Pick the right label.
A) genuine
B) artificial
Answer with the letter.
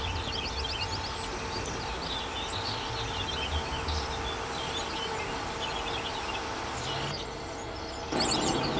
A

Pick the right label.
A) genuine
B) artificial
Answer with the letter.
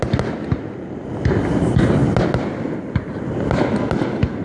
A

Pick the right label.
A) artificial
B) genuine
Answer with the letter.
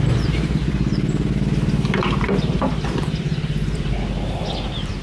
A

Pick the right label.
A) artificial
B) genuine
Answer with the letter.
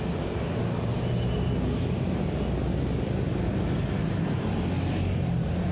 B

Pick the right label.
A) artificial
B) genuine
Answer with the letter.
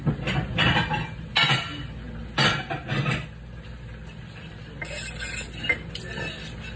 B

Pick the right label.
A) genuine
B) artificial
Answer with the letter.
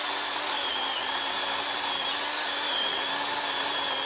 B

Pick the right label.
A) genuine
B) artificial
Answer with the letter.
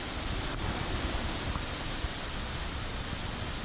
B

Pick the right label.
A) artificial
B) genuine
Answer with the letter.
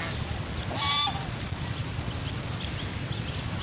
B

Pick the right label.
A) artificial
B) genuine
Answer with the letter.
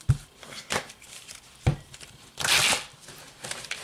A